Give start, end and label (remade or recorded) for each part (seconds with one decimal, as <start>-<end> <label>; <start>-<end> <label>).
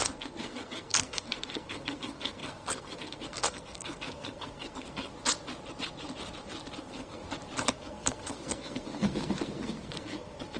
0.0-5.1 remade; 5.1-6.8 recorded; 6.8-7.2 remade; 7.2-7.7 recorded; 7.7-10.6 remade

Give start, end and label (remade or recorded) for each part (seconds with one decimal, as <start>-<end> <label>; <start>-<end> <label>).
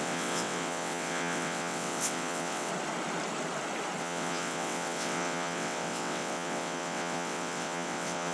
0.0-2.7 remade; 2.7-4.0 recorded; 4.0-8.3 remade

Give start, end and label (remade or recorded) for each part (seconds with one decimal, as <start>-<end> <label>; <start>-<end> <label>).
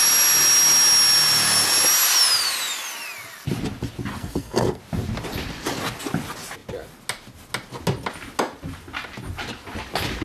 0.0-4.1 recorded; 4.1-4.8 remade; 4.8-10.2 recorded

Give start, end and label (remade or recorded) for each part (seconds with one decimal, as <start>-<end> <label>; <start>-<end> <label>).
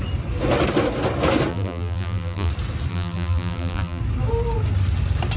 0.0-1.5 recorded; 1.5-2.5 remade; 2.5-2.9 recorded; 2.9-4.0 remade; 4.0-5.4 recorded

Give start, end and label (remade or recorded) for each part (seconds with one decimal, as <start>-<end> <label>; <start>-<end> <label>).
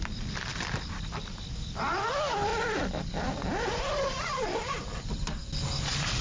0.0-0.5 recorded; 0.5-1.3 remade; 1.3-2.5 recorded; 2.5-4.6 remade; 4.6-6.2 recorded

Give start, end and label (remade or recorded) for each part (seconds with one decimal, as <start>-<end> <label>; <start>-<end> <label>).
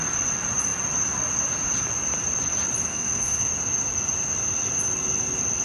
0.0-2.9 recorded; 2.9-3.5 remade; 3.5-5.6 recorded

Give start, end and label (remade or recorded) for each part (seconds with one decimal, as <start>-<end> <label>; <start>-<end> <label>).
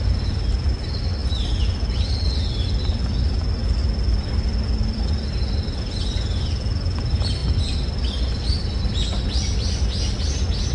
0.0-10.7 recorded